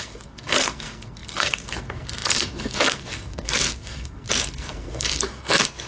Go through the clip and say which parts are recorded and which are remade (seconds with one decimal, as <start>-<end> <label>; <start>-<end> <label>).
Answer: 0.0-5.9 remade